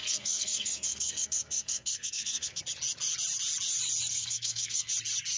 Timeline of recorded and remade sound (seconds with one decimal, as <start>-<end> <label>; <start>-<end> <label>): 0.0-2.6 remade; 2.6-4.1 recorded; 4.1-4.9 remade; 4.9-5.4 recorded